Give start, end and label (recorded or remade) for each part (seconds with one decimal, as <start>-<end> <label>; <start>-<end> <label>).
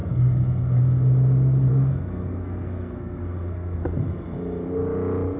0.0-0.8 remade; 0.8-1.7 recorded; 1.7-3.8 remade; 3.8-5.4 recorded